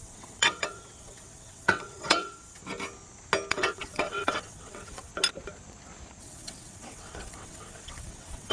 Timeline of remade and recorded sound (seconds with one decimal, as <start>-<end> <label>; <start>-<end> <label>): 0.0-2.6 remade; 2.6-3.5 recorded; 3.5-5.1 remade; 5.1-6.2 recorded; 6.2-8.5 remade